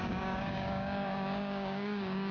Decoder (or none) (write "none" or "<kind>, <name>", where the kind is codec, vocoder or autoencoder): codec, DAC